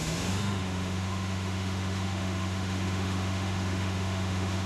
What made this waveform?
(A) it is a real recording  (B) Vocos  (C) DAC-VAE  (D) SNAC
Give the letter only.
C